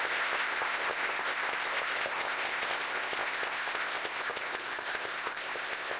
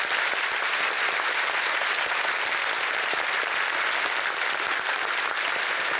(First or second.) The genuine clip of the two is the second